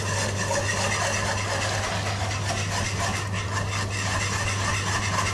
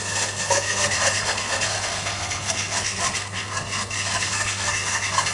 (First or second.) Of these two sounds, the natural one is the first